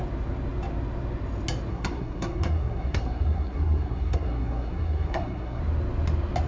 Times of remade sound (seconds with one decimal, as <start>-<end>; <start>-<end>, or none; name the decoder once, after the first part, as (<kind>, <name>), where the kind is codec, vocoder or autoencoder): 1.7-5.6 (codec, SNAC)